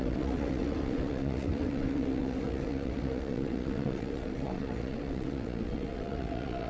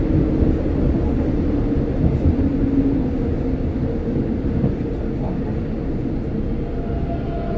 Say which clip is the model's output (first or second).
first